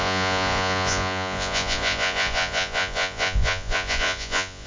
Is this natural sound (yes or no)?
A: no